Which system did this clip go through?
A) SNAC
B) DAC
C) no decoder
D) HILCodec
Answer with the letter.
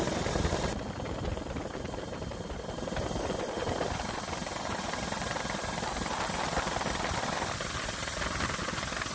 C